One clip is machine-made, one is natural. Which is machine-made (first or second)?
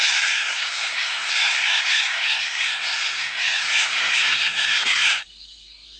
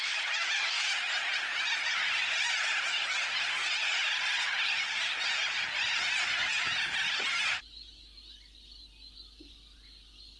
first